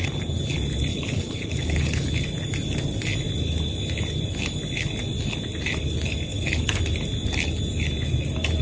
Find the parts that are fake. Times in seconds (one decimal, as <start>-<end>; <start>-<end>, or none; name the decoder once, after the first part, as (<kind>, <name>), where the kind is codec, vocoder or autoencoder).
0.9-2.1 (codec, HILCodec); 6.3-6.8